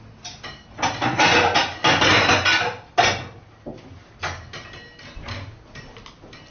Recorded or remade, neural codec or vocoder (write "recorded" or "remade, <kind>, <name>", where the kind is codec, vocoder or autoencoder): recorded